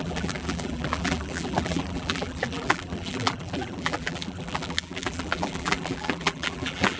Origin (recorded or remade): remade